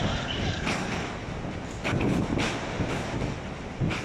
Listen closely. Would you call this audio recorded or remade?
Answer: recorded